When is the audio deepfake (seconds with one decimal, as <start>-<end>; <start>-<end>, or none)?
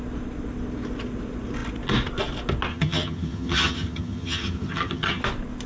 2.7-5.2